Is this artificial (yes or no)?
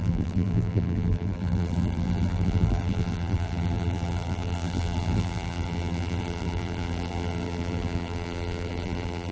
yes